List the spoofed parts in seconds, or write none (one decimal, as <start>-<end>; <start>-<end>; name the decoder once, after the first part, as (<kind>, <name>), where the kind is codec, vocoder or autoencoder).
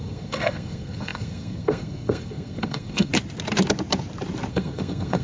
0.0-3.1 (codec, SNAC); 4.5-5.2